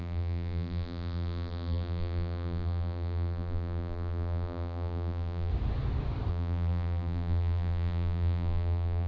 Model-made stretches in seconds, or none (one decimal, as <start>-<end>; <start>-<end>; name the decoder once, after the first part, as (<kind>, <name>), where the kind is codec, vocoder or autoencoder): 0.0-5.5 (vocoder, BigVGAN v2); 6.3-9.1